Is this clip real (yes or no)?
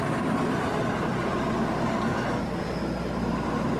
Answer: yes